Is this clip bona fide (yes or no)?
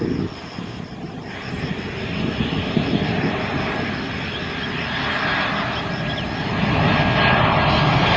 yes